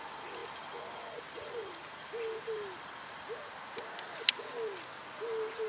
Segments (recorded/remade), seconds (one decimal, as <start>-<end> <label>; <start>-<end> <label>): 0.0-5.7 recorded